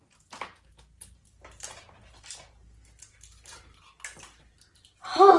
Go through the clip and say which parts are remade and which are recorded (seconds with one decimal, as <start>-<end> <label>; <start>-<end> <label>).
0.0-5.4 recorded